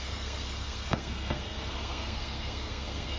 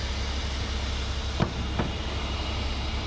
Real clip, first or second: second